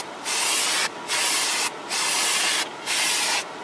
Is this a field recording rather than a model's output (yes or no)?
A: yes